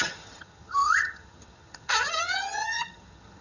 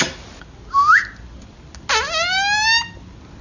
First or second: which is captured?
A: second